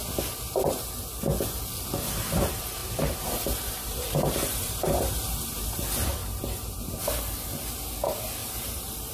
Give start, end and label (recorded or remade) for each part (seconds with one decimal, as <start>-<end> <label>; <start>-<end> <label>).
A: 0.0-2.8 recorded; 2.8-5.8 remade; 5.8-6.2 recorded; 6.2-6.9 remade; 6.9-8.4 recorded; 8.4-9.1 remade